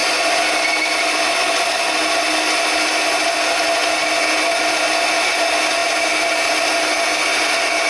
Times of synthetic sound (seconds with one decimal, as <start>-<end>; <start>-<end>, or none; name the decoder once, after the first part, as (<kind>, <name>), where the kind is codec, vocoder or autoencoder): none